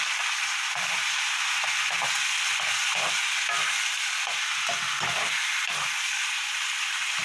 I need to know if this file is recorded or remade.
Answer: recorded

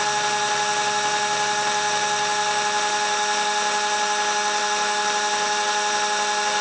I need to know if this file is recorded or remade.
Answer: recorded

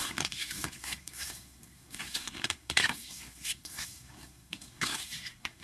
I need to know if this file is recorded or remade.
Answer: remade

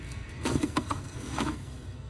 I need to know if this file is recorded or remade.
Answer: remade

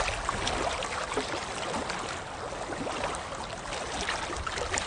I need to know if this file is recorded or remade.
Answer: recorded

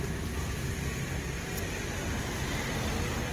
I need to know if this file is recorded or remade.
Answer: recorded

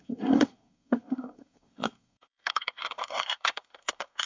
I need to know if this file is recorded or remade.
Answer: remade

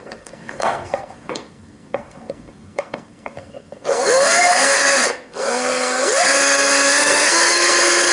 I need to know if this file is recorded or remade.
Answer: remade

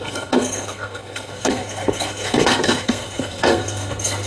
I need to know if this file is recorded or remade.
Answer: remade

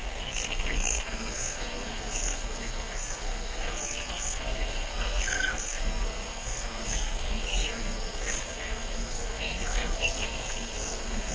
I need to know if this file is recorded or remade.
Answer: remade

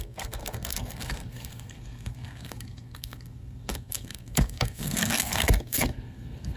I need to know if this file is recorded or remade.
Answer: remade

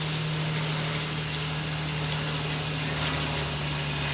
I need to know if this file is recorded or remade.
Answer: recorded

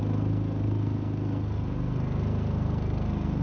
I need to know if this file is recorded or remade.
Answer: remade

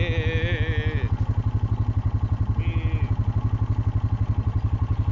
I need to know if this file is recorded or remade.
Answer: recorded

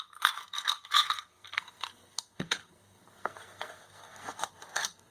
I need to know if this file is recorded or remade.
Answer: remade